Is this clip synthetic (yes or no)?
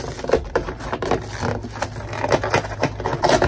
no